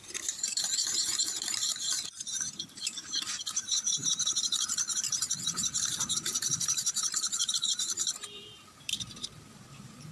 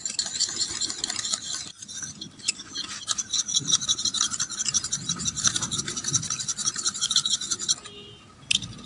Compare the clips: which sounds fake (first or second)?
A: first